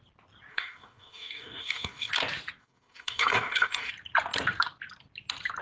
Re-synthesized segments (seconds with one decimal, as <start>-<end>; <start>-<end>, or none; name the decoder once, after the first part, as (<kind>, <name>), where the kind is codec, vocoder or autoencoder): 0.5-2.1 (codec, DAC); 2.6-3.9